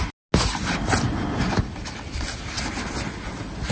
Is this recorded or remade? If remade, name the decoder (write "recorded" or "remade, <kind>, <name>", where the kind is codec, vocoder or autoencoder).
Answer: recorded